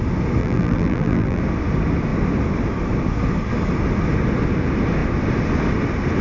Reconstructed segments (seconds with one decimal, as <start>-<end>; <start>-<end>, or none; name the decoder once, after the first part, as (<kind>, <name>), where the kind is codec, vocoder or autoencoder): 0.4-1.4 (vocoder, BigVGAN v2)